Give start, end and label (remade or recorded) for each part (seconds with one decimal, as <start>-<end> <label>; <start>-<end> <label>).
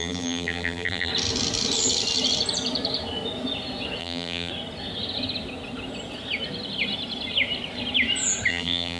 0.0-1.1 remade; 1.1-4.0 recorded; 4.0-4.5 remade; 4.5-8.5 recorded; 8.5-9.0 remade